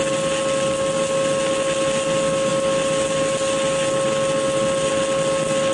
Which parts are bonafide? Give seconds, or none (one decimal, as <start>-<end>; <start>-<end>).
0.0-5.7